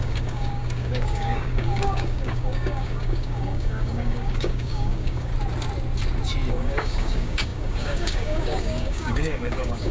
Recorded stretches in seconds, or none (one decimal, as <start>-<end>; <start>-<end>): 5.3-6.5